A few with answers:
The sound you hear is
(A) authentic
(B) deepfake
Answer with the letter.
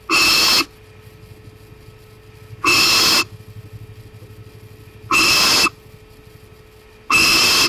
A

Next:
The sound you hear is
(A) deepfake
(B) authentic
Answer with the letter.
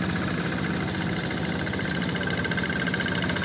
B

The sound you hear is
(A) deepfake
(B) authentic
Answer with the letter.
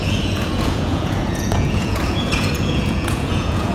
A